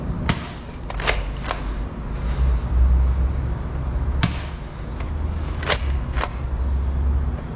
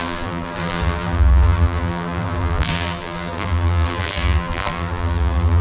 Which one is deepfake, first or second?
second